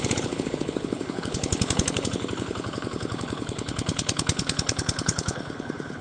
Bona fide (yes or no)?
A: no